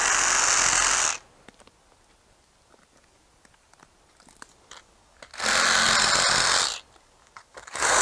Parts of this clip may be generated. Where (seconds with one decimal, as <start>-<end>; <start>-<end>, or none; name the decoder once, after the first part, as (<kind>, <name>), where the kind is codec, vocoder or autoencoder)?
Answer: 4.8-5.3 (codec, DAC); 7.0-8.0